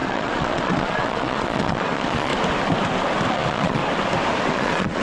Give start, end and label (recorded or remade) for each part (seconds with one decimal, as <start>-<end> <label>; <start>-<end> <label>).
0.0-2.3 remade; 2.3-3.3 recorded; 3.3-3.8 remade; 3.8-4.5 recorded; 4.5-5.0 remade